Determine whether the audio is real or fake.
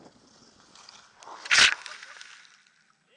real